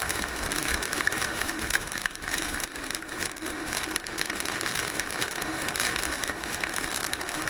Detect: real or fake fake